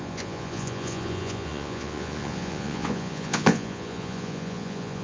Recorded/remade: remade